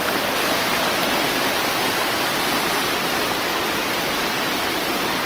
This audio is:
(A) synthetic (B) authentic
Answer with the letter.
B